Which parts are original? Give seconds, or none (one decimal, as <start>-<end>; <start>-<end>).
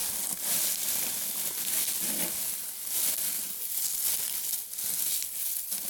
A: 3.4-5.9